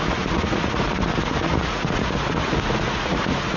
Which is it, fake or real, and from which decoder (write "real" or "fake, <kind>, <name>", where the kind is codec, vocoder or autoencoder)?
fake, vocoder, Vocos